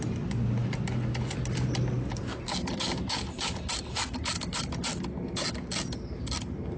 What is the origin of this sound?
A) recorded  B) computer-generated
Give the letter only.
A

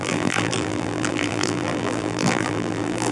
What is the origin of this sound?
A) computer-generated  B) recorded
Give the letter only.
A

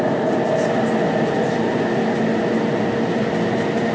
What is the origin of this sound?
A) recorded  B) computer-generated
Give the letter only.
A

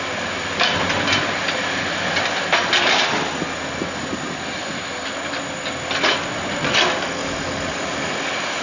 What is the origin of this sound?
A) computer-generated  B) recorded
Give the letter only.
B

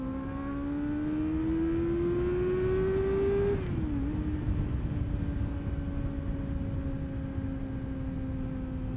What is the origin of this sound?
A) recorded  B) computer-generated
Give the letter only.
A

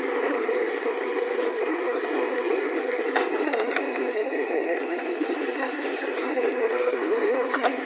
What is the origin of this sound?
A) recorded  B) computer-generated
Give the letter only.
B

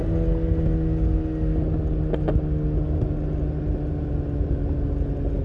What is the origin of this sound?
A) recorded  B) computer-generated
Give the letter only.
A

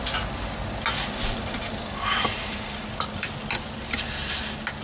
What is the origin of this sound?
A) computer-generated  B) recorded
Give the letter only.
B